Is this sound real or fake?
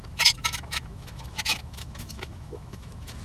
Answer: fake